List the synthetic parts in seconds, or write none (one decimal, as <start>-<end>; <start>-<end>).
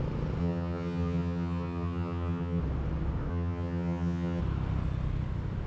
0.4-2.6; 3.3-4.4